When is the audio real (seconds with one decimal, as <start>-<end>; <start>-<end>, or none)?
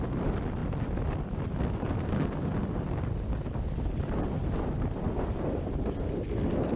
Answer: 0.0-6.8